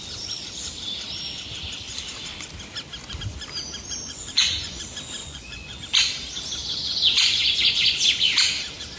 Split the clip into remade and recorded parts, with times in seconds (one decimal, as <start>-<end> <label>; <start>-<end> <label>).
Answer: 0.0-4.0 recorded; 4.0-4.8 remade; 4.8-5.2 recorded; 5.2-5.8 remade; 5.8-6.6 recorded; 6.6-8.0 remade; 8.0-9.0 recorded